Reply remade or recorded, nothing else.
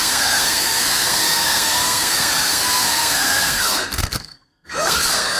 remade